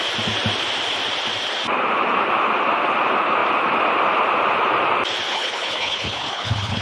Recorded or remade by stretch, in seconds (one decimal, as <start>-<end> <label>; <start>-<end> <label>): 0.0-5.3 recorded; 5.3-6.8 remade